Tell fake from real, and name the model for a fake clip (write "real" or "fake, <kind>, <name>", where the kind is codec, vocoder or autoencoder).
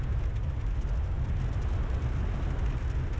real